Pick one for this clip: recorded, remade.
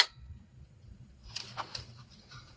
remade